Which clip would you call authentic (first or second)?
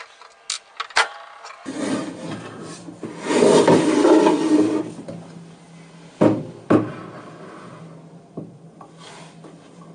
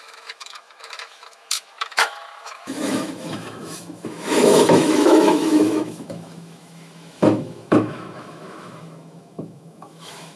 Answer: first